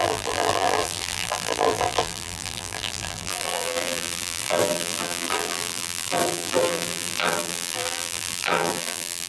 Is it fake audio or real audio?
fake